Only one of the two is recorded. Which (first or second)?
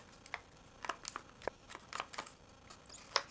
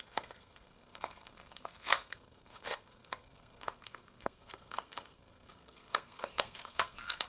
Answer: first